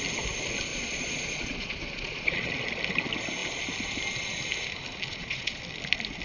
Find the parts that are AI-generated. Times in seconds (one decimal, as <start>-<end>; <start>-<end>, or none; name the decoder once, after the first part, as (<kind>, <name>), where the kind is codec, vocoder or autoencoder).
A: 0.7-2.5 (vocoder, Vocos); 5.1-5.6